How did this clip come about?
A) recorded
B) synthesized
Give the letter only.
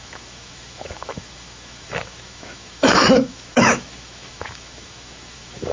B